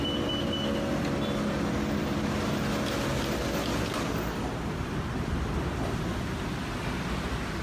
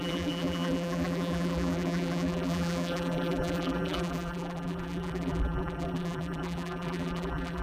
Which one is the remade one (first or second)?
second